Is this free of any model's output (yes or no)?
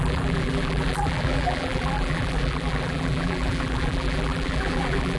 no